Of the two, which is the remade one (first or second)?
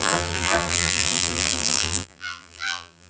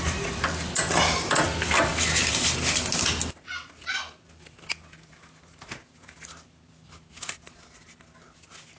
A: first